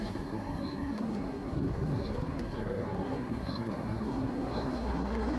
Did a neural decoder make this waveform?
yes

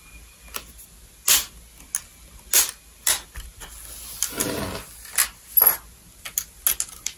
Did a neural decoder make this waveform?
no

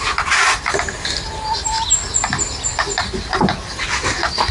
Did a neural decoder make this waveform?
no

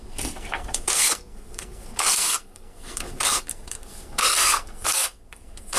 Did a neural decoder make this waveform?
yes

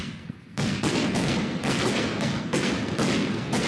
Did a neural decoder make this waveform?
yes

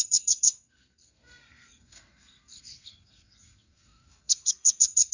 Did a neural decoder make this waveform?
yes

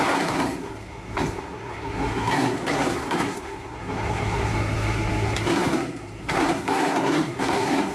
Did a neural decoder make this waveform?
yes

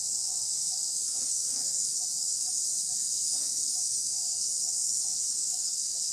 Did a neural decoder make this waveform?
yes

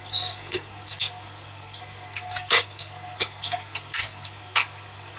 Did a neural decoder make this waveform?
yes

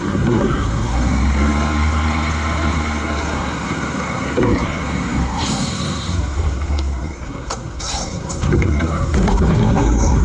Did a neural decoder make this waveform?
yes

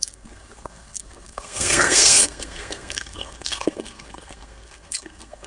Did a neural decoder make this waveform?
yes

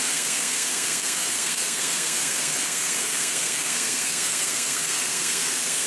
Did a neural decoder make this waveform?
yes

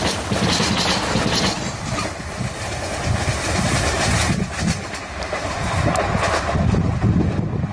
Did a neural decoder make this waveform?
no